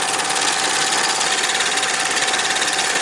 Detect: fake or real real